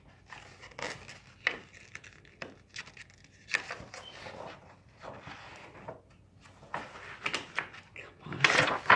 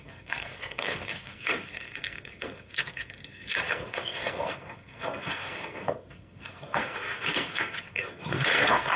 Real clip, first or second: first